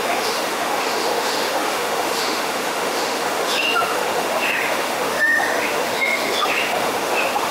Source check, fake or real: fake